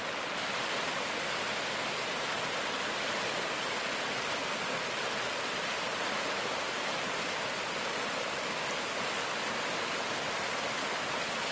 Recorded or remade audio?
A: recorded